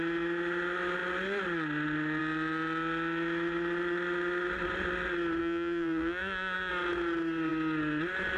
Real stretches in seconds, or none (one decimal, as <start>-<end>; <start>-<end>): 0.0-5.4; 6.7-8.4